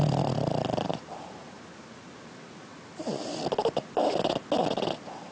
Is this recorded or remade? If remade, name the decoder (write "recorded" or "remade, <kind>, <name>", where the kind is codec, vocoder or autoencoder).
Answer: recorded